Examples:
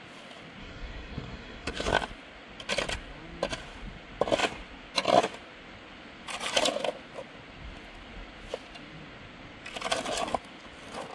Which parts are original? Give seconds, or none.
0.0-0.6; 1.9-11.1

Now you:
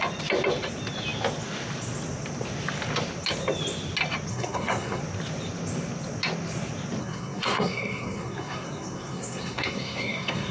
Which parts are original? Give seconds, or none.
0.0-4.3; 5.0-7.0

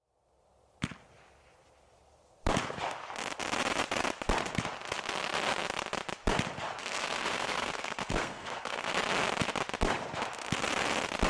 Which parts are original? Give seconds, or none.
0.0-6.8; 8.9-11.3